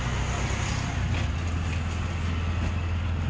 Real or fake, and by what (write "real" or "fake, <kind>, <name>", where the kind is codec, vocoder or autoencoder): real